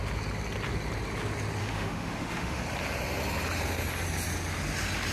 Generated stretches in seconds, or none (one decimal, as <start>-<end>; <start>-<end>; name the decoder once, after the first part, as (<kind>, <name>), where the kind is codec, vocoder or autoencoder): 1.6-2.6 (autoencoder, DAC-VAE)